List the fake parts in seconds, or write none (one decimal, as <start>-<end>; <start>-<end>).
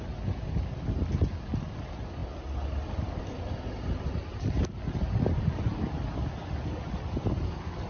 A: none